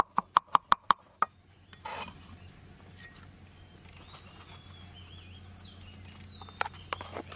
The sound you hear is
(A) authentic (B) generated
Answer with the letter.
A